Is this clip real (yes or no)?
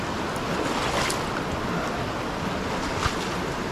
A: yes